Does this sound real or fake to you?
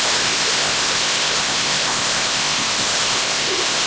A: fake